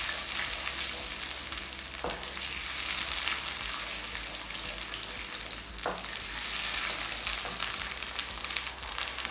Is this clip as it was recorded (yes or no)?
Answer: yes